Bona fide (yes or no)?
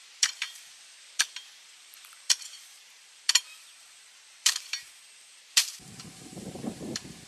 no